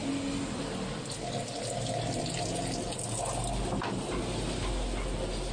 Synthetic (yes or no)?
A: no